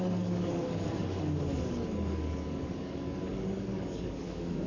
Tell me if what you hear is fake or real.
fake